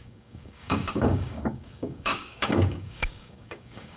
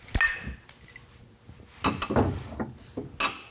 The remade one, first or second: first